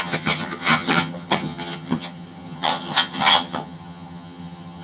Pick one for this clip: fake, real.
fake